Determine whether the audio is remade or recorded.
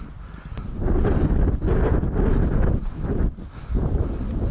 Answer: recorded